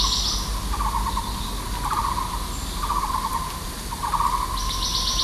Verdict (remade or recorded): recorded